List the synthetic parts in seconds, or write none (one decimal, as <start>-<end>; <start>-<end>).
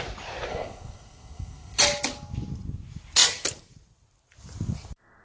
0.5-1.8